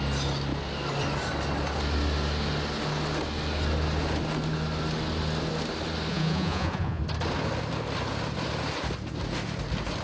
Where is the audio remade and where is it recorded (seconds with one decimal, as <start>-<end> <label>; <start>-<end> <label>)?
0.0-6.1 recorded; 6.1-7.0 remade; 7.0-10.0 recorded